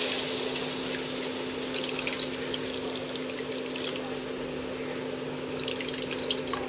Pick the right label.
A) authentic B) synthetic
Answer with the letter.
A